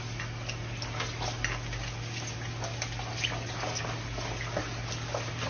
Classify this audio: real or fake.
real